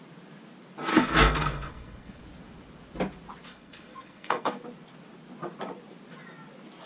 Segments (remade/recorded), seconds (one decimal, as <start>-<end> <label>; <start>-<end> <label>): 0.0-0.9 recorded; 0.9-2.2 remade; 2.2-3.5 recorded; 3.5-4.6 remade; 4.6-6.9 recorded